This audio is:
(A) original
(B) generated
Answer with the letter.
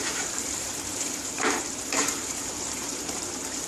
B